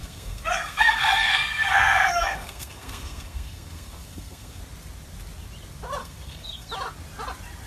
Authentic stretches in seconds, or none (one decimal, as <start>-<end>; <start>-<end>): 4.6-6.0; 6.7-7.7